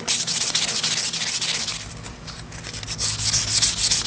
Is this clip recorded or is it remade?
recorded